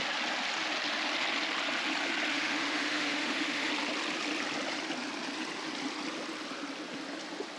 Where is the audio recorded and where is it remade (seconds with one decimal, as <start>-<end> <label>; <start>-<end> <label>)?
0.0-2.3 recorded; 2.3-3.7 remade; 3.7-7.6 recorded